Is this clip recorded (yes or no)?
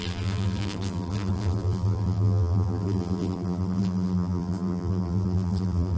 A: no